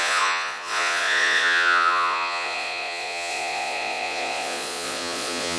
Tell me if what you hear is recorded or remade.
remade